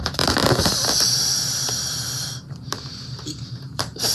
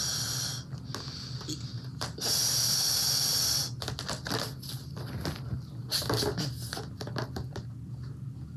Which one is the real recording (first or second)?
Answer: second